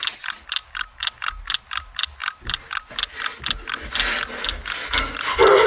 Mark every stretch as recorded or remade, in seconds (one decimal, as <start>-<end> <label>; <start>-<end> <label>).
0.0-5.7 recorded